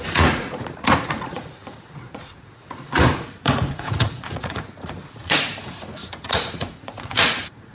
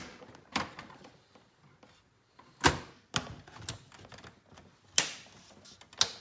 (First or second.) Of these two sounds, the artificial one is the first